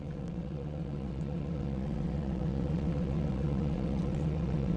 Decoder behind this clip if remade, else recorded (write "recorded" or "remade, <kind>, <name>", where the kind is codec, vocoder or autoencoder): remade, vocoder, WaveNeXt